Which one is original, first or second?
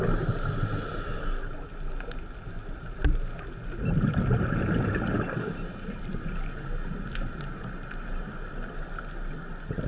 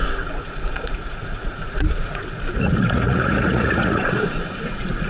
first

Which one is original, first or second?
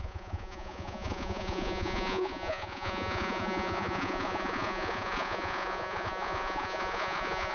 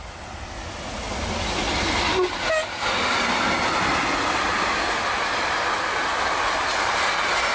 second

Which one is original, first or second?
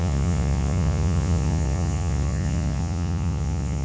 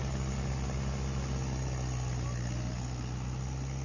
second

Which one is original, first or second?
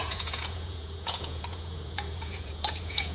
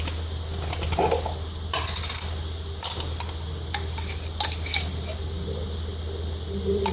second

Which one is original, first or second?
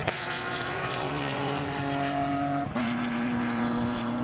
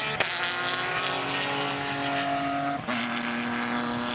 second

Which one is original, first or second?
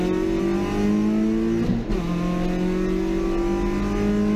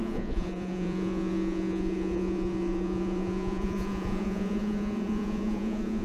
first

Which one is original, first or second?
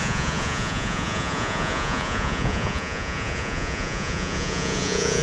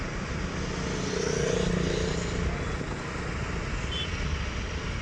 second